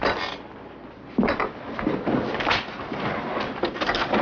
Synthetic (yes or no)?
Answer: no